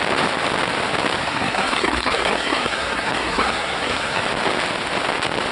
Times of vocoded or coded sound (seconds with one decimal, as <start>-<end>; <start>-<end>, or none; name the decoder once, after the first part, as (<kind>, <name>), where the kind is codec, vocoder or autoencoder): 1.2-4.2 (codec, SNAC)